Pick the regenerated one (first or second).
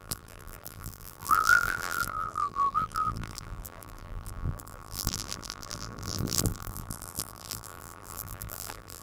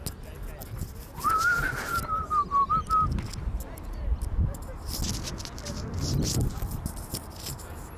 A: first